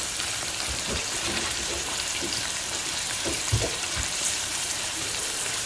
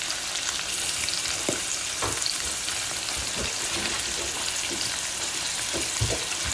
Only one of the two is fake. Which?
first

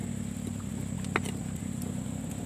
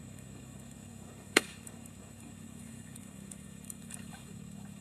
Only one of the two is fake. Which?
second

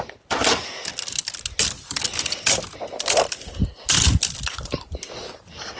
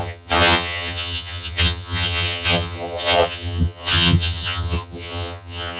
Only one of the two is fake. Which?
second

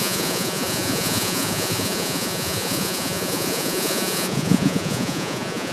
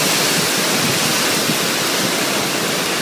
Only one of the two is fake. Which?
first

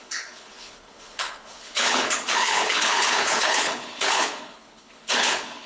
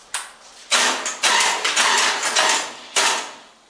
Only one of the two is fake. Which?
first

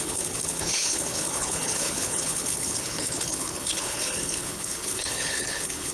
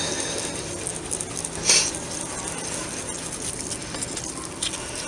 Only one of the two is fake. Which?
first